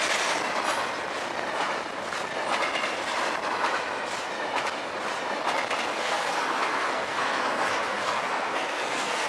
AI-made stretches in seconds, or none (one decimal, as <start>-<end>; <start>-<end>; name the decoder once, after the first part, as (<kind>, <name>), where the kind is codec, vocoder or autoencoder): 5.9-9.3 (codec, SNAC)